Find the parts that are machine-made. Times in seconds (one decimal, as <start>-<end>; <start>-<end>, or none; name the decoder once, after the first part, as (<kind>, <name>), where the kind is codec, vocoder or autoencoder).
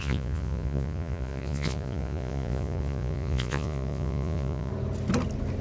0.0-4.7 (vocoder, Vocos)